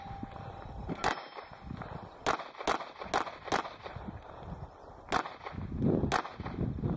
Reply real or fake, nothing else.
real